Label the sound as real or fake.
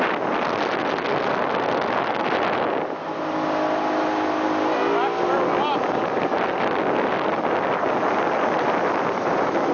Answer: real